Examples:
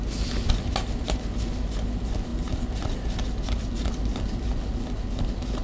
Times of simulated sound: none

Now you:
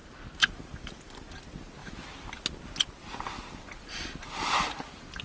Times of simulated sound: 0.0-1.4 (vocoder, BigVGAN v2); 1.8-2.4

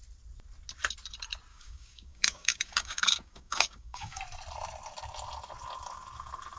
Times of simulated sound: 1.5-4.2 (codec, DAC)

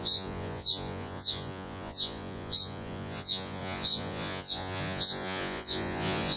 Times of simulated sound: 0.0-6.4 (vocoder, Vocos)